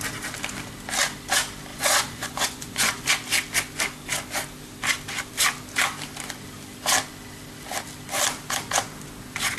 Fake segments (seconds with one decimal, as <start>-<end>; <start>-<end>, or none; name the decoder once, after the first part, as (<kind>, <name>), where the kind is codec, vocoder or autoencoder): 1.7-3.1 (vocoder, Vocos)